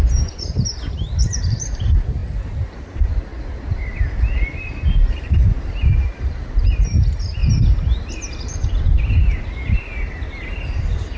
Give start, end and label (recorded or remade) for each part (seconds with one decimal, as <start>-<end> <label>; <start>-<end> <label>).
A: 0.0-3.3 remade; 3.3-5.1 recorded; 5.1-7.4 remade; 7.4-8.3 recorded; 8.3-11.2 remade